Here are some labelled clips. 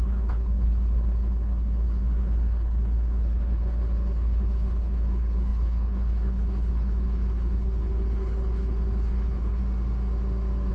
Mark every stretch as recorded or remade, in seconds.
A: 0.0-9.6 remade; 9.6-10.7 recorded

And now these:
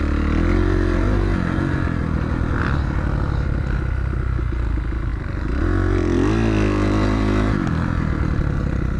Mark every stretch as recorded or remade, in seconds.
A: 0.0-9.0 recorded

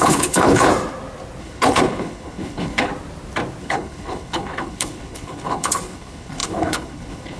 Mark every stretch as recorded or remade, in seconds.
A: 0.0-0.7 remade; 0.7-1.4 recorded; 1.4-2.9 remade; 2.9-3.6 recorded; 3.6-7.4 remade

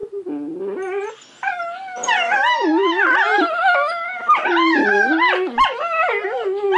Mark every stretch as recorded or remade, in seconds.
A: 0.0-6.8 recorded